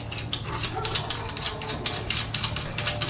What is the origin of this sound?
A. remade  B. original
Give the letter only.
B